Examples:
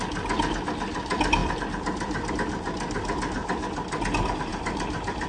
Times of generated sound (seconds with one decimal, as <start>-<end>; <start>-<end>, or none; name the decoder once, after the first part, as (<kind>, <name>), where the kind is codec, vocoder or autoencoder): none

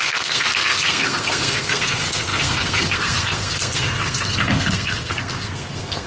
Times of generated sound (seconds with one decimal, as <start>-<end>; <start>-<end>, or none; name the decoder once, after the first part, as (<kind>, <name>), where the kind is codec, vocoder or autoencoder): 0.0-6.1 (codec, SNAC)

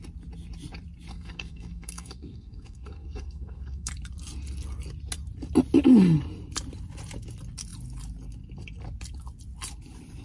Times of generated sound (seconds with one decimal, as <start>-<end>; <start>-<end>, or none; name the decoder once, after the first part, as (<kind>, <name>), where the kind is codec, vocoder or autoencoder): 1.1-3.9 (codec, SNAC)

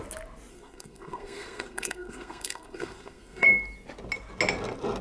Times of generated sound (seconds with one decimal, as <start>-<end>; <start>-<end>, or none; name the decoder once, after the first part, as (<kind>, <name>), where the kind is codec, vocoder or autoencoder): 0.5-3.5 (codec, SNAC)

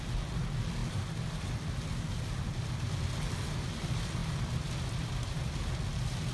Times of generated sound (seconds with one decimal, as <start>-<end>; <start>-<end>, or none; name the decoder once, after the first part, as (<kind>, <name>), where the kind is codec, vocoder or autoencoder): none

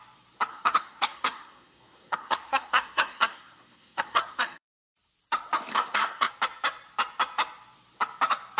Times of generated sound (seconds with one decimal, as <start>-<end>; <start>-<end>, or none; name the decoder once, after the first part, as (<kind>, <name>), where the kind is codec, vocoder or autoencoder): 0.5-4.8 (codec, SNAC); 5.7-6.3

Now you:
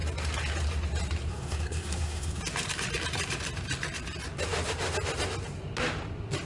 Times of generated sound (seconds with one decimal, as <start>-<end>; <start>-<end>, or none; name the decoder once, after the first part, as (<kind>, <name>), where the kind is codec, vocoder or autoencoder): 1.3-2.4 (codec, SNAC)

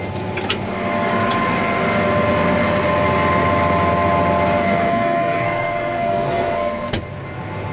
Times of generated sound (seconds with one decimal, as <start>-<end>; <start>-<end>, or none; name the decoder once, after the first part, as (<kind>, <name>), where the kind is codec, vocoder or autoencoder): 4.6-6.9 (codec, SNAC)